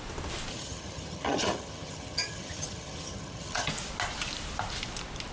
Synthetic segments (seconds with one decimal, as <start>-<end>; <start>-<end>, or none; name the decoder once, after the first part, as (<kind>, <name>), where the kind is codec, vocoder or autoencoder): 0.5-3.7 (vocoder, HiFi-GAN)